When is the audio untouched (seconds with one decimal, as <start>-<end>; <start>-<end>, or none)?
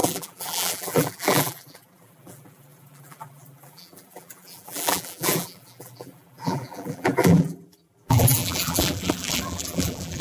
none